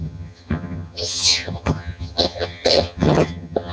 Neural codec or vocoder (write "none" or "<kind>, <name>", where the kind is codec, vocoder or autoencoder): vocoder, HiFi-GAN